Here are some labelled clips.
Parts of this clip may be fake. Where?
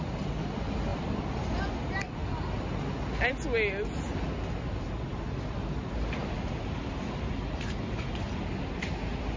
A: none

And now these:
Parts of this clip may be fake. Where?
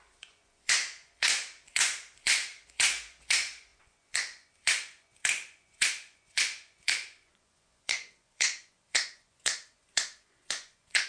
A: 0.0-11.1 (vocoder, Vocos)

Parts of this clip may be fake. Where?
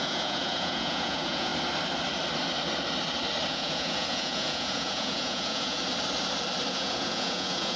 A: 0.0-1.5 (vocoder, Vocos); 3.5-5.8; 6.7-7.8